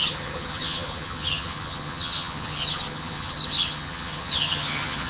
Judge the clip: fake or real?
fake